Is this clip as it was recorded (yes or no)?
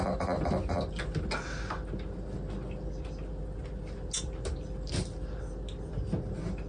yes